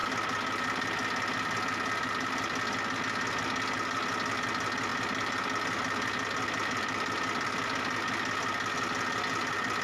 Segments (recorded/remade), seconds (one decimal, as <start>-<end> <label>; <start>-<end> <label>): 0.0-4.9 recorded; 4.9-7.8 remade; 7.8-9.8 recorded